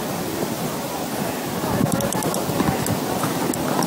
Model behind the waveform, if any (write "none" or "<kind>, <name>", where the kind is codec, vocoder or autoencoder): none